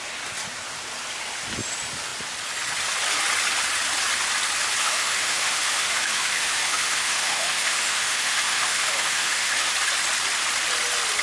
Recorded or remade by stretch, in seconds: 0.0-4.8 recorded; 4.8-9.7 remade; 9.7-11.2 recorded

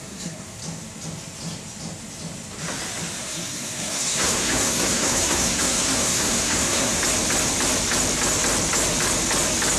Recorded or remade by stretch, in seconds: 0.0-0.6 remade; 0.6-3.2 recorded; 3.2-7.0 remade; 7.0-9.8 recorded

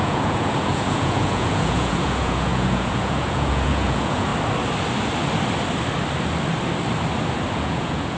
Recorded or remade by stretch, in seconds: 0.0-4.3 remade; 4.3-7.5 recorded; 7.5-8.2 remade

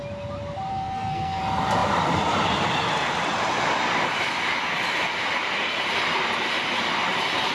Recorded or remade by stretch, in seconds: 0.0-0.7 recorded; 0.7-1.4 remade; 1.4-7.5 recorded

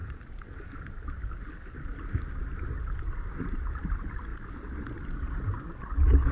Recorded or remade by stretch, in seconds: 0.0-6.3 recorded

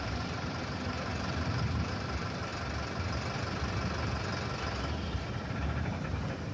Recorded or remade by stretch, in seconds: 0.0-2.5 remade; 2.5-5.5 recorded; 5.5-6.5 remade